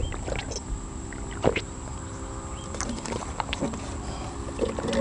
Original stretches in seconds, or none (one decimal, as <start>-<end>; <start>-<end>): 0.0-0.6; 3.6-5.0